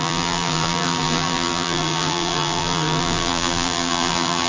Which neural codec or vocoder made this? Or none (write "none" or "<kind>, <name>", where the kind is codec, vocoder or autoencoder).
vocoder, BigVGAN v2